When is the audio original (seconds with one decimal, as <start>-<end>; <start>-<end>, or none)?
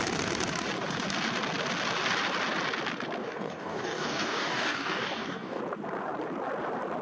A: 0.0-3.2; 5.6-7.0